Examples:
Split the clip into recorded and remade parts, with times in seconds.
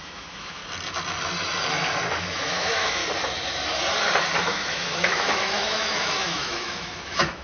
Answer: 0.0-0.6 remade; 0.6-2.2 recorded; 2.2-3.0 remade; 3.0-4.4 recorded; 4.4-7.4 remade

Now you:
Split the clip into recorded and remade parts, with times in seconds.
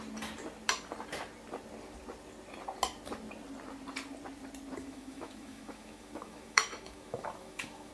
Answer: 0.0-4.8 recorded; 4.8-7.9 remade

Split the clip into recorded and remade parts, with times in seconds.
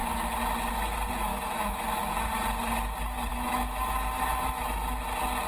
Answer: 0.0-1.3 recorded; 1.3-2.3 remade; 2.3-3.3 recorded; 3.3-4.6 remade; 4.6-5.5 recorded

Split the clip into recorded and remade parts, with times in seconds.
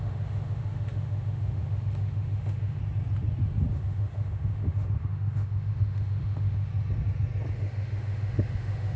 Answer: 0.0-2.8 remade; 2.8-3.7 recorded; 3.7-6.7 remade; 6.7-7.5 recorded; 7.5-9.0 remade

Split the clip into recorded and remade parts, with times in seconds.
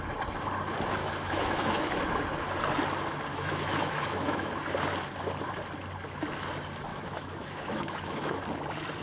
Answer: 0.0-1.0 recorded; 1.0-2.0 remade; 2.0-3.3 recorded; 3.3-4.5 remade; 4.5-6.9 recorded; 6.9-8.4 remade; 8.4-9.0 recorded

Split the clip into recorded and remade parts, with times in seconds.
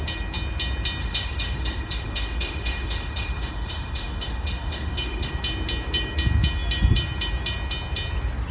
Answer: 0.0-1.0 recorded; 1.0-5.3 remade; 5.3-8.5 recorded